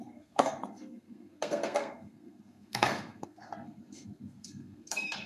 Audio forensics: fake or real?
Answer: fake